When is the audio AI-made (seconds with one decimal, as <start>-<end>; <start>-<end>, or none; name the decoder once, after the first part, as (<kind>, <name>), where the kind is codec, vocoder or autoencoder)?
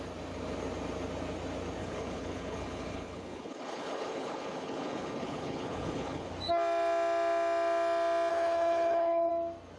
1.8-6.3 (codec, HILCodec); 8.3-9.3